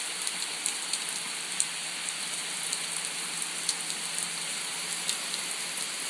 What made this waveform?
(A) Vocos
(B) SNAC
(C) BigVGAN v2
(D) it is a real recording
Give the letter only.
D